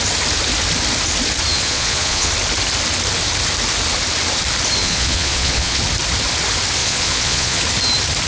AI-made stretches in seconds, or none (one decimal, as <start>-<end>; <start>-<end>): 1.5-2.3; 4.8-5.8; 6.8-7.6